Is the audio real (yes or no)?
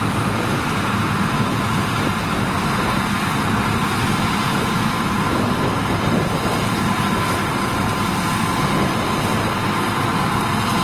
yes